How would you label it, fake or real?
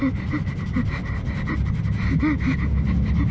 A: real